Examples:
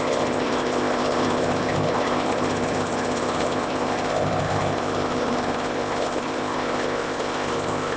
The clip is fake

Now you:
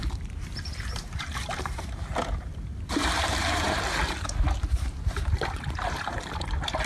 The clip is fake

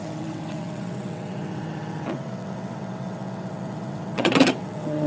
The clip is fake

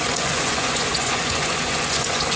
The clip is fake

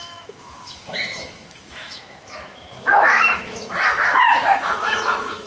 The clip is fake